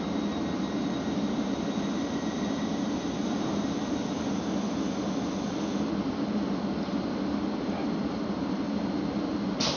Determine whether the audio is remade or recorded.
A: recorded